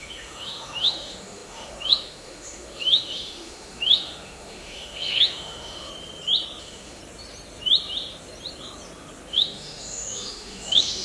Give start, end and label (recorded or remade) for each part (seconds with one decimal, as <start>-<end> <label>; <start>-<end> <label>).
0.0-5.9 remade; 5.9-6.6 recorded; 6.6-7.0 remade; 7.0-9.3 recorded; 9.3-11.0 remade